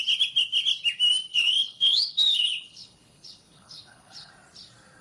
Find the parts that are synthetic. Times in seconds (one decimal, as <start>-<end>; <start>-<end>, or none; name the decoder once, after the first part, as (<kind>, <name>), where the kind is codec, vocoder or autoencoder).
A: 1.3-4.3 (codec, HILCodec)